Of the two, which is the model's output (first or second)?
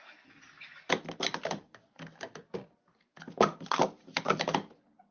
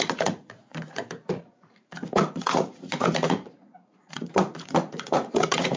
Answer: second